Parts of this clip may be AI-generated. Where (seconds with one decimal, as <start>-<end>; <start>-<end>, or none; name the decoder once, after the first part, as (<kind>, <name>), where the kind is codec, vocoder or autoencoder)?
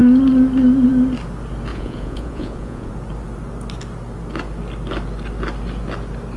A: 1.7-2.9 (vocoder, Vocos)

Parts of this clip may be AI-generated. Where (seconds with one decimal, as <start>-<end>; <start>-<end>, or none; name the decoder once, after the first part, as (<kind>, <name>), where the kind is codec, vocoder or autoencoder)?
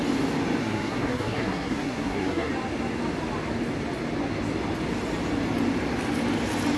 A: 0.6-2.5 (codec, SNAC)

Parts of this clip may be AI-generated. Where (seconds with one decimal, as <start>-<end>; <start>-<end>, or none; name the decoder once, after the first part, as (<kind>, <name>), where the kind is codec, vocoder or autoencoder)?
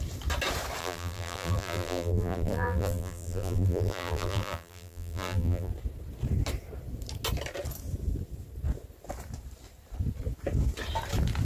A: 0.8-5.7 (vocoder, BigVGAN v2)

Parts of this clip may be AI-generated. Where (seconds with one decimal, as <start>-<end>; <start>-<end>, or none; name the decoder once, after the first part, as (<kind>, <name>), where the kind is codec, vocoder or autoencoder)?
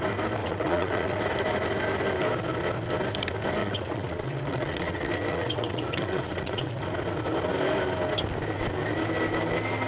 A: 0.4-1.2 (vocoder, WaveNeXt); 3.6-6.7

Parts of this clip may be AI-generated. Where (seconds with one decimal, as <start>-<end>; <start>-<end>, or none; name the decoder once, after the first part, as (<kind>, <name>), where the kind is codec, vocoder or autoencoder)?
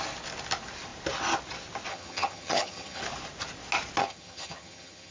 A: 1.9-3.0 (vocoder, HiFi-GAN); 4.0-5.1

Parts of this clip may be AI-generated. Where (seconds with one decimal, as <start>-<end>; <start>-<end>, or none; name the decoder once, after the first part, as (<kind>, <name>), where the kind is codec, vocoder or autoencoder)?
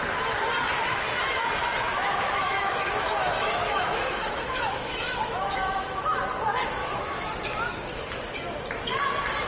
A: 1.9-6.0 (autoencoder, DAC-VAE); 6.8-7.3